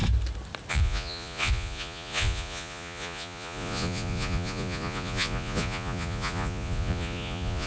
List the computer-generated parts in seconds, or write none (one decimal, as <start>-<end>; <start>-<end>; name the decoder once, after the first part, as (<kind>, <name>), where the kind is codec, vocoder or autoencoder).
0.7-7.7 (vocoder, Vocos)